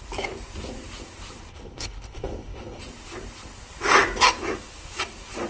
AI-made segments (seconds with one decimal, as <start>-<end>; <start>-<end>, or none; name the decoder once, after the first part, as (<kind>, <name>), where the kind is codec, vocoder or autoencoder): 1.5-2.8 (codec, HILCodec)